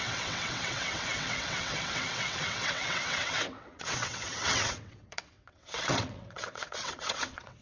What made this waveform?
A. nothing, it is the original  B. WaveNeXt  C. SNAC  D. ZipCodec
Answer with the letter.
B